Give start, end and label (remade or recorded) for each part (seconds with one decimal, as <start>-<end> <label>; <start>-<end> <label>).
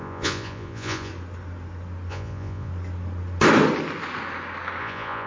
0.0-1.1 remade; 1.1-2.1 recorded; 2.1-2.7 remade; 2.7-4.8 recorded; 4.8-5.3 remade